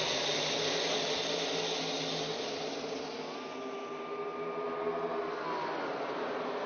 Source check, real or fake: real